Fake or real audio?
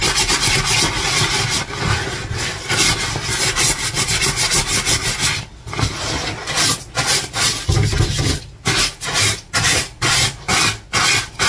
real